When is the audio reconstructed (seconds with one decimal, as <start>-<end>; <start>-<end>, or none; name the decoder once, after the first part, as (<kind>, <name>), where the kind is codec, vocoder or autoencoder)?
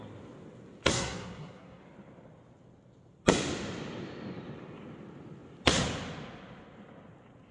0.9-1.8 (codec, SNAC)